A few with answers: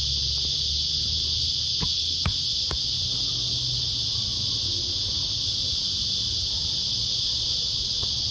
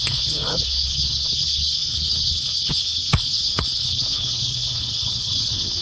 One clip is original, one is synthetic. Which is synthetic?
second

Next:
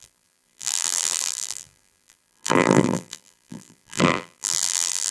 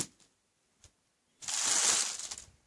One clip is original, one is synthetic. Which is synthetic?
first